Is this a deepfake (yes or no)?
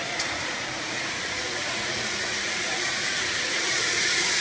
yes